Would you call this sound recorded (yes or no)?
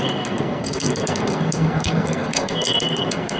no